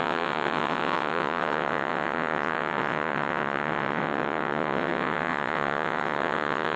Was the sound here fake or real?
fake